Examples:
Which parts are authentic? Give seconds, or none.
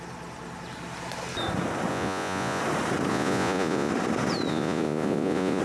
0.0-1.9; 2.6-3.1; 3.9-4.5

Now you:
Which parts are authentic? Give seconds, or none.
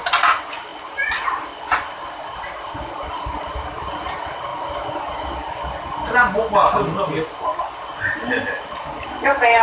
0.0-9.6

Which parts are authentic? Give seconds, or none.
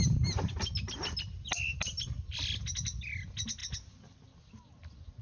0.0-5.2